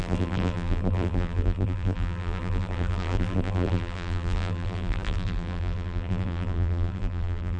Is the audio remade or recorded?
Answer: remade